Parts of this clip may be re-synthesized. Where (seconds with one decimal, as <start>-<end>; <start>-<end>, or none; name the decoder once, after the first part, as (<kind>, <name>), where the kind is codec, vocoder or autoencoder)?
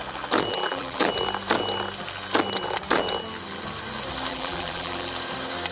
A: 0.5-1.1 (vocoder, BigVGAN v2); 4.3-5.1